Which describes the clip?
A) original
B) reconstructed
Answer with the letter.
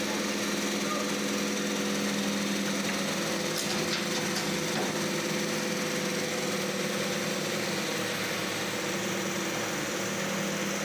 A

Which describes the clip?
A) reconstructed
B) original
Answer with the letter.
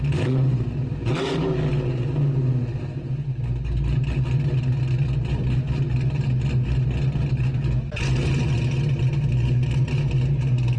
B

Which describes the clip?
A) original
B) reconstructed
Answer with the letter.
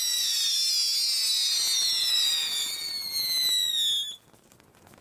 A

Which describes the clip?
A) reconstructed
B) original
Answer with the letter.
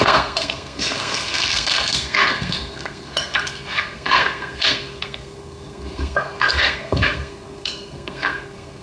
A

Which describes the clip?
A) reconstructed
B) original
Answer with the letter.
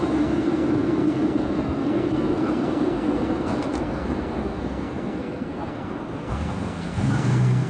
A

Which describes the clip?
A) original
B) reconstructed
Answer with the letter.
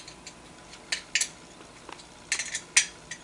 A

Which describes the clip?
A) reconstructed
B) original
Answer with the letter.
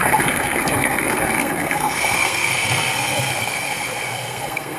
A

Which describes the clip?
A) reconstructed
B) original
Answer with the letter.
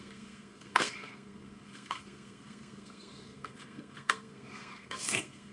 A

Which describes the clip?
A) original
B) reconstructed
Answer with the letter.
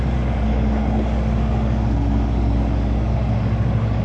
B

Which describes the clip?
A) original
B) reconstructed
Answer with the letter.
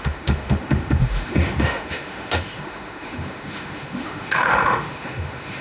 B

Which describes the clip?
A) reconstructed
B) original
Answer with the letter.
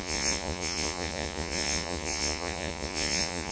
A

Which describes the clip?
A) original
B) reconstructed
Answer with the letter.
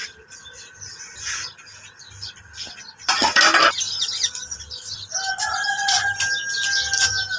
A